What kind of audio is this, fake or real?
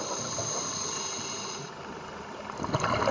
real